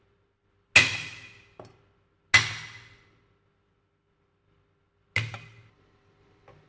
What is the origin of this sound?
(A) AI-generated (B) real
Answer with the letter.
B